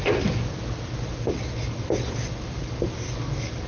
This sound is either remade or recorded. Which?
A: recorded